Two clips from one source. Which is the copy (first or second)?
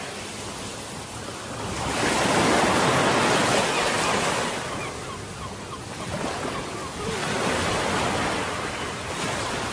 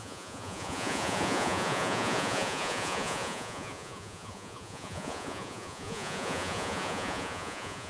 second